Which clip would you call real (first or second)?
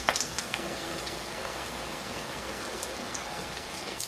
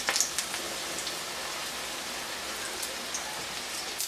second